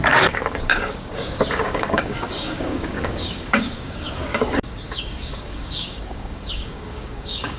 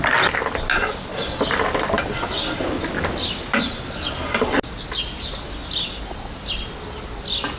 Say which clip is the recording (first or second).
second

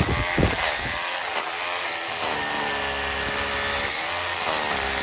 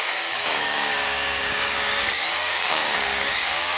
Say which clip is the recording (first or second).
first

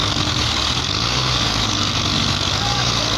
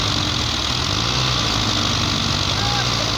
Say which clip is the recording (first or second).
second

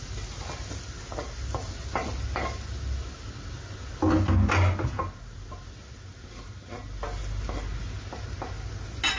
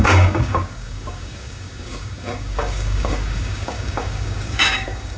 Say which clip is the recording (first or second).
first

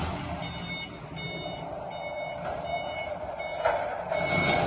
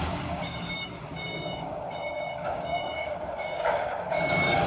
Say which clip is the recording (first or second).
first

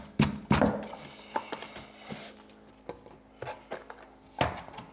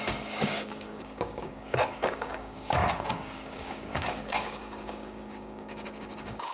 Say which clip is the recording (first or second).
first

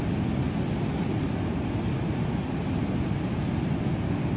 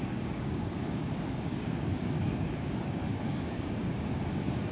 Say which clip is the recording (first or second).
first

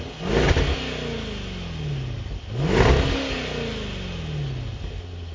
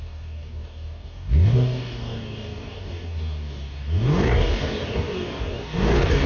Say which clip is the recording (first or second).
first